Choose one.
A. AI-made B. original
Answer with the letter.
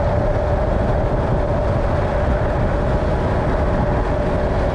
B